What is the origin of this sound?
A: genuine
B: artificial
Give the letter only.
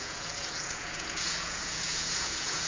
B